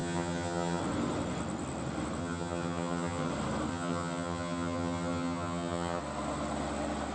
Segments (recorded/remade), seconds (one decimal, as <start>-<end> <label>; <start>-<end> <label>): 0.0-0.8 remade; 0.8-2.2 recorded; 2.2-3.3 remade; 3.3-3.7 recorded; 3.7-6.0 remade; 6.0-7.1 recorded